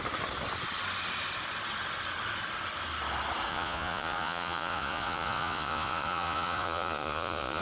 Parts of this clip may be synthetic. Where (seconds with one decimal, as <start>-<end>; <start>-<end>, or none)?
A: 3.5-7.6